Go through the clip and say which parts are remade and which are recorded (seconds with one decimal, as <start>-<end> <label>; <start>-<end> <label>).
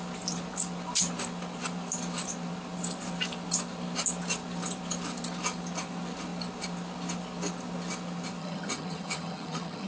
0.0-8.4 recorded; 8.4-9.9 remade